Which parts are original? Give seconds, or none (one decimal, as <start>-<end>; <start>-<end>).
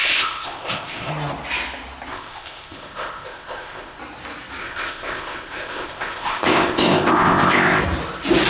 1.1-2.1; 4.0-4.6; 7.8-8.5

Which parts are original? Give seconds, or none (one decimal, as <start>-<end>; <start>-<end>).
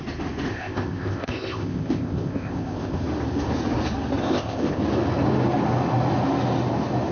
0.0-0.5; 3.0-4.2; 4.8-7.1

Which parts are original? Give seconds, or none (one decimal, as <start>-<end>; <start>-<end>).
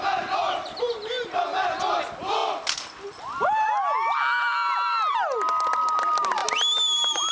0.0-7.3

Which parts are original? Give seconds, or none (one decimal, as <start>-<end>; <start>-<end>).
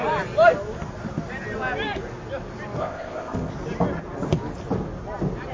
0.0-2.8; 3.5-5.5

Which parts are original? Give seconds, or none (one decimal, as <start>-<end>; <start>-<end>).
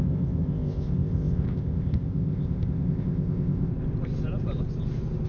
3.7-5.3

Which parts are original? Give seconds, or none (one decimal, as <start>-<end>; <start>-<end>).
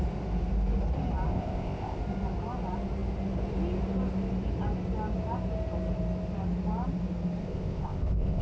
0.0-1.3; 2.0-7.4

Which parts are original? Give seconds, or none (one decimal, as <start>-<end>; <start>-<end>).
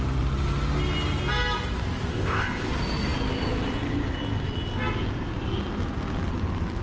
0.0-2.1; 2.7-6.8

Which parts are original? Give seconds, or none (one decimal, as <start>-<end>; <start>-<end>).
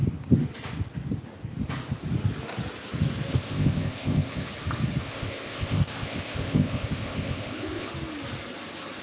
0.0-3.3; 4.5-5.0; 7.9-9.0